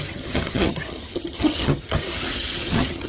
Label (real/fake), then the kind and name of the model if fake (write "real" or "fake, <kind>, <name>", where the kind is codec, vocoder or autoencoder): fake, vocoder, HiFi-GAN